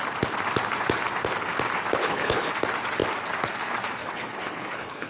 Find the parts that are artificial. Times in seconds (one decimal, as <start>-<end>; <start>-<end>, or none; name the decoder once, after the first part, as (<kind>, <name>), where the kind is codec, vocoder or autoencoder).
2.0-2.5 (codec, HILCodec); 4.0-5.1